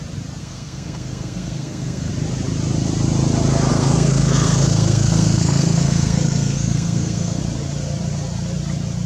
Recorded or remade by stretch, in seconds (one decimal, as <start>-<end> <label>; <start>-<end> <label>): 0.0-0.4 recorded; 0.4-2.1 remade; 2.1-3.7 recorded; 3.7-7.4 remade; 7.4-9.1 recorded